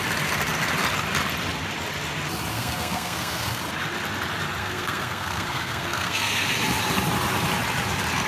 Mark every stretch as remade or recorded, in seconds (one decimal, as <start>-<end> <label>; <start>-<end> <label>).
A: 0.0-2.5 recorded; 2.5-3.6 remade; 3.6-4.6 recorded; 4.6-6.5 remade; 6.5-8.3 recorded